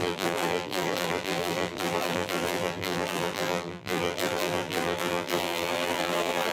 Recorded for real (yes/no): no